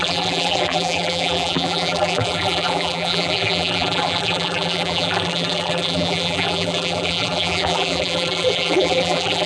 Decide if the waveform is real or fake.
fake